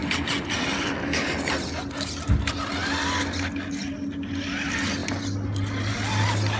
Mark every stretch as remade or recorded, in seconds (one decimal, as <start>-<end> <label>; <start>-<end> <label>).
0.0-6.6 recorded